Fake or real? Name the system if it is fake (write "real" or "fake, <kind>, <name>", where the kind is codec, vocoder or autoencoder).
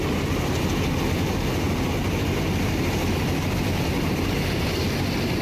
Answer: real